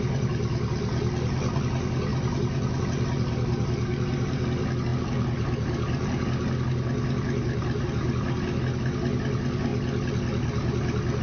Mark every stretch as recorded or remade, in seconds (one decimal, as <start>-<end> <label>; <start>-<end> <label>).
0.0-11.2 recorded